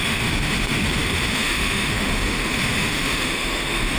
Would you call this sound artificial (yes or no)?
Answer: yes